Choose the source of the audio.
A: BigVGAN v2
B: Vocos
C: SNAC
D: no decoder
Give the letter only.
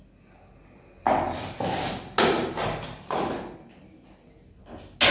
D